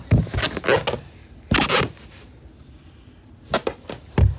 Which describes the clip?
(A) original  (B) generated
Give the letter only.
A